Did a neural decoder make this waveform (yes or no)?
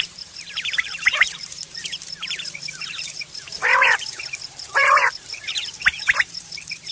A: yes